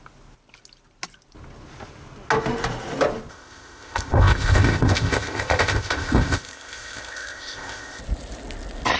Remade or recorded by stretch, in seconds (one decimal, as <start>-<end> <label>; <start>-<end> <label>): 0.0-3.3 recorded; 3.3-8.0 remade; 8.0-9.0 recorded